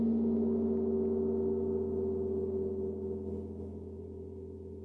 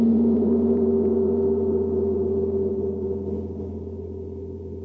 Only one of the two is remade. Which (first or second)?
second